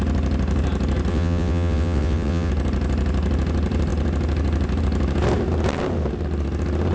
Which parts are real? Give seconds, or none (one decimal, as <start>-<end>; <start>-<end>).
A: 0.0-1.1; 2.5-6.9